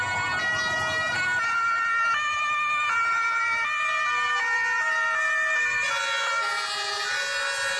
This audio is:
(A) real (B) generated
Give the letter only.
A